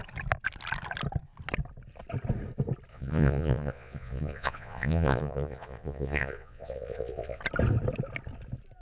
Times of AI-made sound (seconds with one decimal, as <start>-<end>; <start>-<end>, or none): 2.9-7.4